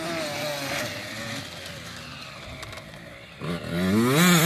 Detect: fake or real real